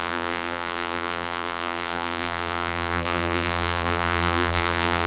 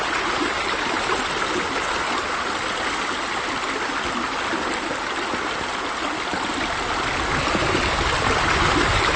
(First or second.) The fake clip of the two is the first